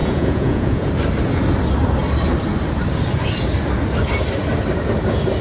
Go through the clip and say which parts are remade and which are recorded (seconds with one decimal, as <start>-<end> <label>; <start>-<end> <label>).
0.0-0.9 remade; 0.9-5.4 recorded